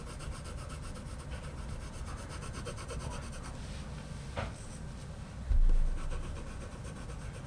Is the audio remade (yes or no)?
no